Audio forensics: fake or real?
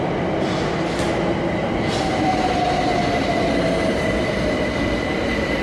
real